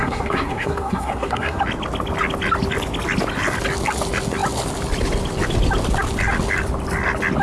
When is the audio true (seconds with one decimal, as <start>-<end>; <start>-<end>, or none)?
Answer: 1.6-7.4